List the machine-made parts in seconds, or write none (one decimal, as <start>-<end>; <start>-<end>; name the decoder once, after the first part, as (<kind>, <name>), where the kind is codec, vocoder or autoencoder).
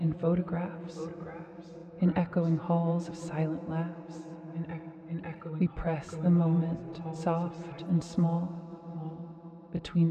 1.8-3.1 (vocoder, Vocos)